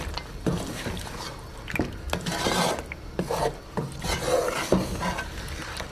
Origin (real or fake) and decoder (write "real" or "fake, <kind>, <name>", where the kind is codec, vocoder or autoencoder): real